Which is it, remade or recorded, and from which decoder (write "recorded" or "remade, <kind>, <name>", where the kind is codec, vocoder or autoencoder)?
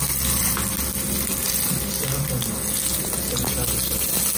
recorded